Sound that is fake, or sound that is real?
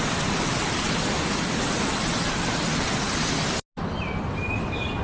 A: real